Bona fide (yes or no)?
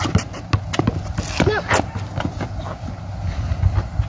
yes